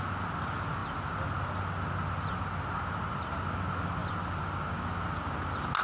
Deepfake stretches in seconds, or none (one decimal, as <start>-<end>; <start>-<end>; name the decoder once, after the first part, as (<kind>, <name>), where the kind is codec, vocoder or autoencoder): none